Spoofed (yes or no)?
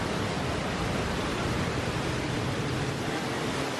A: yes